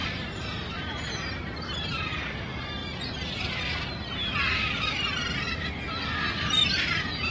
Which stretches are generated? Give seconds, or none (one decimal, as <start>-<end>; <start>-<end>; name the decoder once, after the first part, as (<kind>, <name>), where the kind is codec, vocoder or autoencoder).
0.0-1.1 (vocoder, BigVGAN v2)